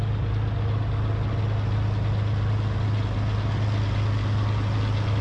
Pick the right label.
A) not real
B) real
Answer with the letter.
B